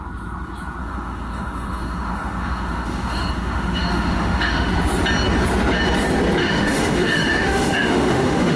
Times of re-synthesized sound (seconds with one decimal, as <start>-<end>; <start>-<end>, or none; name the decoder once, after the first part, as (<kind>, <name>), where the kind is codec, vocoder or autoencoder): 0.8-4.7 (autoencoder, DAC-VAE); 6.4-8.6